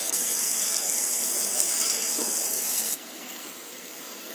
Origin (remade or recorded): remade